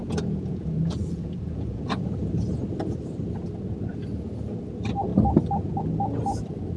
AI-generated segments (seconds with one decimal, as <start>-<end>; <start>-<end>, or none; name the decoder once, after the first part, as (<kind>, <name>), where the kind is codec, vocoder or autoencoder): 0.0-2.3 (vocoder, Vocos)